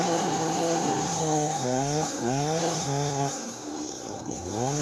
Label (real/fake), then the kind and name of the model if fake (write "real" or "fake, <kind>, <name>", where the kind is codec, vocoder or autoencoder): fake, codec, SNAC